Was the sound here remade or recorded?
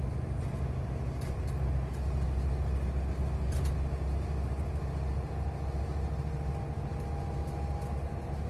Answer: recorded